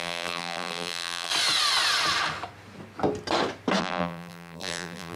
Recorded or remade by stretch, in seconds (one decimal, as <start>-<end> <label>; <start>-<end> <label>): 0.0-1.3 remade; 1.3-3.8 recorded; 3.8-5.2 remade